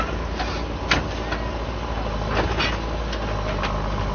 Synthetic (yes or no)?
no